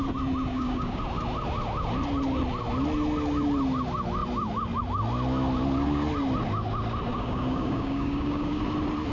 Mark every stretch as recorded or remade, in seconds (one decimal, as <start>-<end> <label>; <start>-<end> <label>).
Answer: 0.0-0.5 recorded; 0.5-1.0 remade; 1.0-7.1 recorded; 7.1-8.6 remade; 8.6-9.1 recorded